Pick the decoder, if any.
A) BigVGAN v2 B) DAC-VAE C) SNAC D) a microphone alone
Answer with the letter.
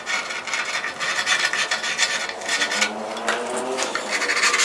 D